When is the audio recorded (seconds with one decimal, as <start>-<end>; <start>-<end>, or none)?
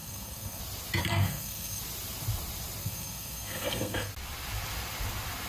0.6-1.0; 1.8-2.8; 4.1-5.5